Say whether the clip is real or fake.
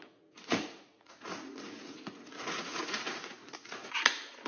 fake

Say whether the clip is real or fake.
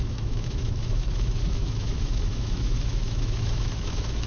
fake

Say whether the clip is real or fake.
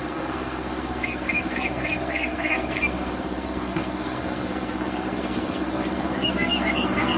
fake